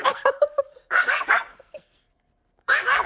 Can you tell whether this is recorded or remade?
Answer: remade